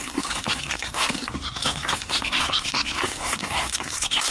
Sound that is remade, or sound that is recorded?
remade